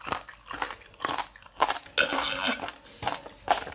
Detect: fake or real real